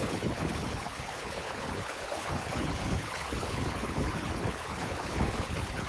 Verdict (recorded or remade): remade